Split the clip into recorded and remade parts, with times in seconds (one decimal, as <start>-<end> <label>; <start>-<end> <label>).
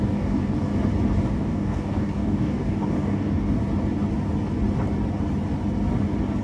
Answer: 0.0-0.7 remade; 0.7-1.3 recorded; 1.3-3.6 remade; 3.6-6.4 recorded